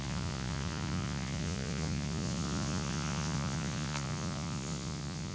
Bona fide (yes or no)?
no